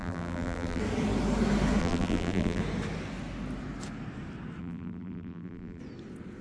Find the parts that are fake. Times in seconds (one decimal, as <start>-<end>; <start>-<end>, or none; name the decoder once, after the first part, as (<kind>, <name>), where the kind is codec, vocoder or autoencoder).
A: 0.0-0.8 (vocoder, BigVGAN v2); 1.8-2.6; 4.6-5.8